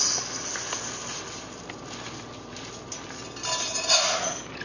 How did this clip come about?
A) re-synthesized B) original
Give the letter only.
B